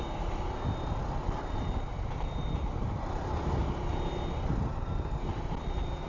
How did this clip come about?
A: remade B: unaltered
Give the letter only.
B